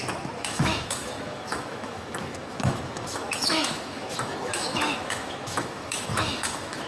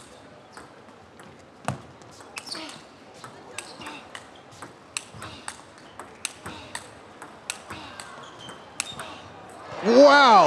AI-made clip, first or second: first